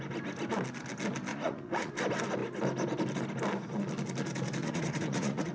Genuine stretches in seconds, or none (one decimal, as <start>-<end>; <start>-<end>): 0.0-1.3; 1.9-4.6